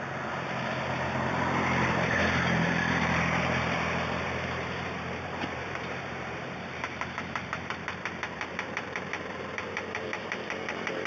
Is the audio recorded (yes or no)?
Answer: no